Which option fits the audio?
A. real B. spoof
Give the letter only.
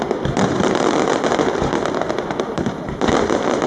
B